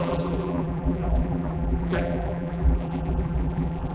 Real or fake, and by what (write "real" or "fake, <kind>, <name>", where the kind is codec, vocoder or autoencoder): fake, vocoder, BigVGAN v2